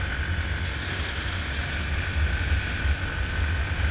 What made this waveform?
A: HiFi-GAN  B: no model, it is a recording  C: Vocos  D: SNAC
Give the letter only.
B